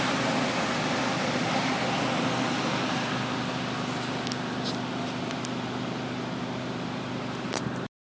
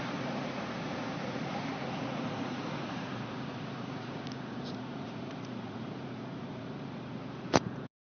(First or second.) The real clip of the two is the first